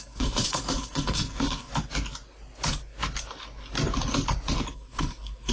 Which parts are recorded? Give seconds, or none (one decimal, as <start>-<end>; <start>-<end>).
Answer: 1.7-4.7